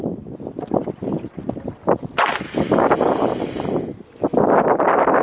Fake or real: real